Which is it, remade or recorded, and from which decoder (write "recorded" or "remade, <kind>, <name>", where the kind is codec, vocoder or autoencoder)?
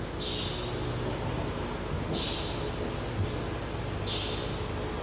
recorded